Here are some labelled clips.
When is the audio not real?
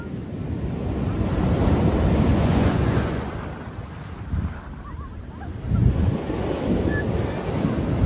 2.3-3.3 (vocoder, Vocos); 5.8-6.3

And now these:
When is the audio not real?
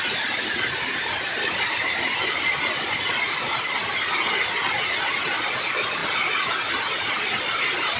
none